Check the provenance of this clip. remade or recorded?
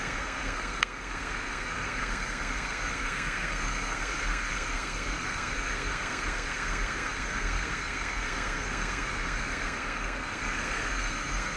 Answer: remade